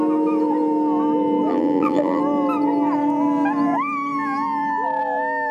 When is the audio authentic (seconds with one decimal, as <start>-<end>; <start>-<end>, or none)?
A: 0.0-1.5; 2.2-5.5